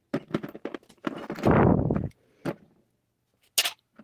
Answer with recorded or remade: recorded